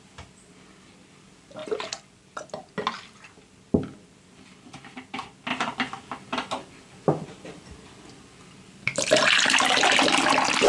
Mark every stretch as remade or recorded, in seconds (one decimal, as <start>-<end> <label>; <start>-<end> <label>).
0.0-10.7 recorded